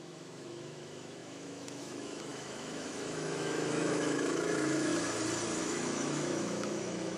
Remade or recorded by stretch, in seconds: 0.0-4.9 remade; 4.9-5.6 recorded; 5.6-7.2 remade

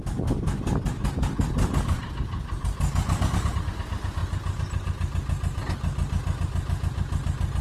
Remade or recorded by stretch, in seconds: 0.0-7.6 recorded

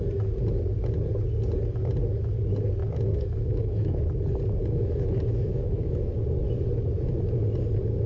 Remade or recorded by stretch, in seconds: 0.0-2.8 recorded; 2.8-3.9 remade; 3.9-4.6 recorded; 4.6-6.1 remade; 6.1-8.1 recorded

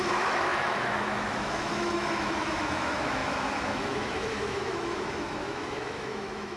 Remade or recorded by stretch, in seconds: 0.0-6.6 remade

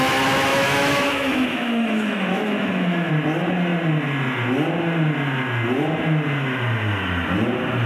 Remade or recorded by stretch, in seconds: 0.0-0.5 recorded; 0.5-3.1 remade; 3.1-7.9 recorded